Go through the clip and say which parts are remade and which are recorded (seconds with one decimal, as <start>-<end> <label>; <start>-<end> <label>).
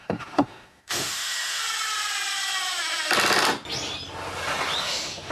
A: 0.0-1.6 remade; 1.6-4.8 recorded; 4.8-5.3 remade